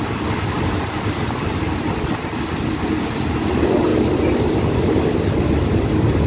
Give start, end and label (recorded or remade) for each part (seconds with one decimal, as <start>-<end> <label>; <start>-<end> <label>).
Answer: 0.0-6.3 recorded